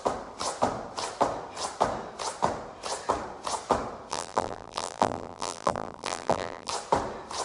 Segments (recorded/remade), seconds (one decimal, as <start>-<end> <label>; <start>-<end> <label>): 0.0-4.1 recorded; 4.1-6.7 remade; 6.7-7.4 recorded

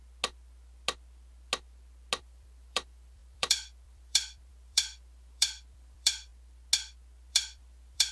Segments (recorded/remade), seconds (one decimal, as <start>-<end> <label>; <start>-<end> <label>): 0.0-2.2 recorded; 2.2-6.3 remade; 6.3-7.3 recorded; 7.3-8.1 remade